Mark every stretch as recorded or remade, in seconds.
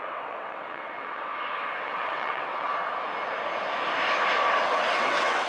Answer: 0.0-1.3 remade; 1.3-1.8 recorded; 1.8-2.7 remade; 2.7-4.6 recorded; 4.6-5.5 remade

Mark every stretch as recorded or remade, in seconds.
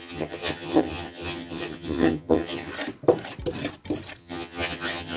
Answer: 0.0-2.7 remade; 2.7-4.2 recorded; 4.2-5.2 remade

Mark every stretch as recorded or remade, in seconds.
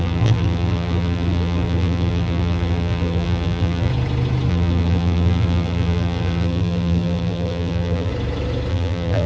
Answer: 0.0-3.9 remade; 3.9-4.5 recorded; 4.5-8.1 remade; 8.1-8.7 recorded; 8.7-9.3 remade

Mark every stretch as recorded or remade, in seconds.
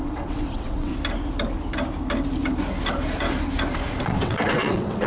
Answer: 0.0-0.9 remade; 0.9-4.0 recorded; 4.0-5.1 remade